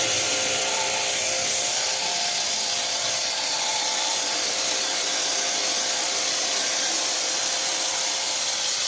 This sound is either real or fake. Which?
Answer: fake